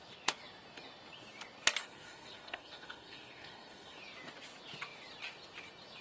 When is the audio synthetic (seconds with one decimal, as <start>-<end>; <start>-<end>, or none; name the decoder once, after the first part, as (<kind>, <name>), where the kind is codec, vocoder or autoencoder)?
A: 1.8-4.0 (codec, SNAC)